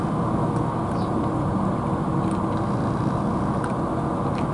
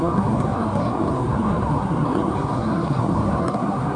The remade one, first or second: second